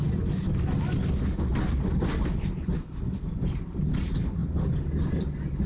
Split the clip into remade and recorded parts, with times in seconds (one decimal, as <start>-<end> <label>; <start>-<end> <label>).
0.0-5.7 recorded